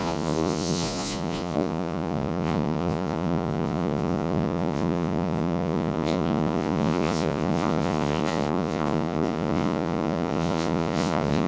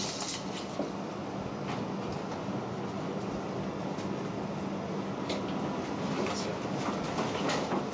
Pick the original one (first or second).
second